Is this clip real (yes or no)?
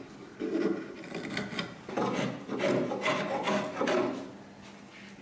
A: yes